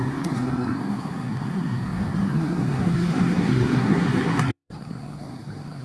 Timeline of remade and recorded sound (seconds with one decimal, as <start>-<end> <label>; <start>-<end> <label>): 0.0-5.8 remade